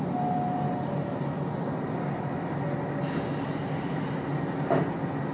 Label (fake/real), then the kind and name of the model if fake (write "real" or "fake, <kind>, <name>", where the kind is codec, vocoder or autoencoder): real